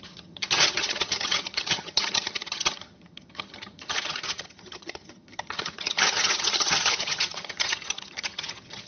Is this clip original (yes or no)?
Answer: no